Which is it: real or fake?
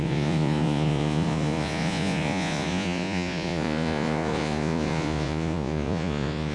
fake